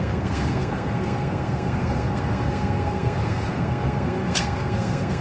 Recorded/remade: remade